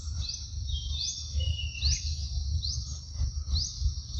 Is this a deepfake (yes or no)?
yes